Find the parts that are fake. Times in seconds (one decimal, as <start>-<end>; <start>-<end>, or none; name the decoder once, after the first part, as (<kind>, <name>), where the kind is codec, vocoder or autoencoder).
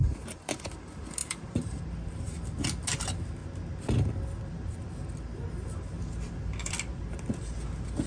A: 0.0-0.7 (vocoder, BigVGAN v2); 1.2-2.3